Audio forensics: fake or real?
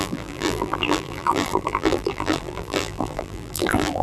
fake